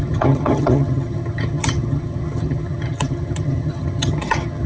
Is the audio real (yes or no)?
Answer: no